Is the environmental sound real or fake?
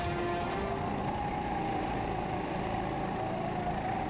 real